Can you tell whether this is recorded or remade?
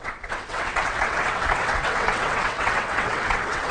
remade